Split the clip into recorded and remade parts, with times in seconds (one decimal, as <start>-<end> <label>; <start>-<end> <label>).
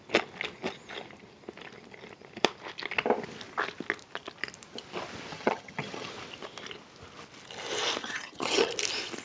0.0-5.3 recorded; 5.3-6.1 remade; 6.1-8.0 recorded; 8.0-8.7 remade; 8.7-9.2 recorded